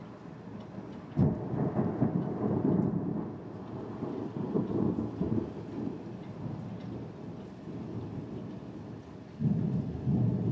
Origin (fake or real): real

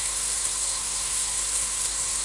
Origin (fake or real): fake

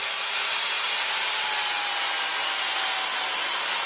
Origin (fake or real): real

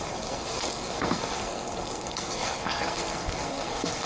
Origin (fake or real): fake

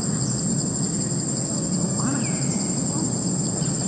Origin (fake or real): real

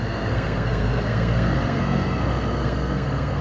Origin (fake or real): fake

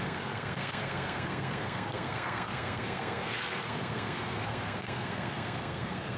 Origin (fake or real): fake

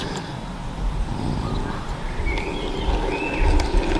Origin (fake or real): real